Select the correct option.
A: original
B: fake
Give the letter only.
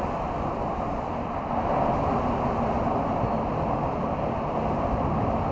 A